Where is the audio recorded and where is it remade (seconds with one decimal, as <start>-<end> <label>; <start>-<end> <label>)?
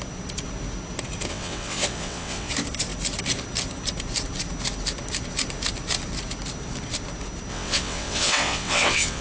0.0-1.3 recorded; 1.3-2.5 remade; 2.5-7.5 recorded; 7.5-9.2 remade